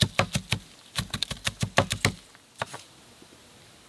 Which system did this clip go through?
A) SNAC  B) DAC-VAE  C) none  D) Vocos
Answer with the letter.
C